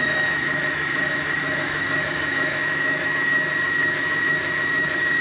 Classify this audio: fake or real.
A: fake